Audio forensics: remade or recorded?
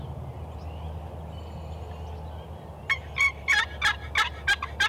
recorded